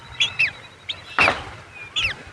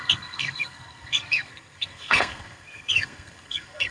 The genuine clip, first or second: first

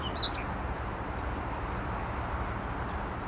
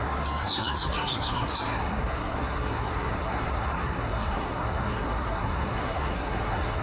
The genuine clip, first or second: first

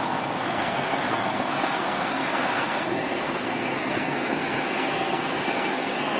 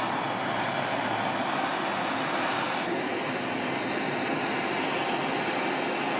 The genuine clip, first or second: second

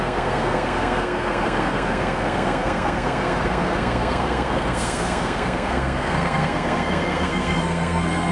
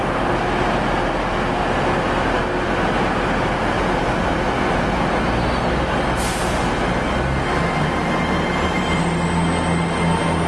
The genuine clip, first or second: second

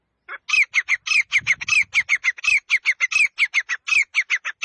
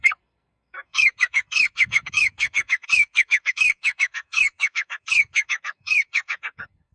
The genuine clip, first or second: first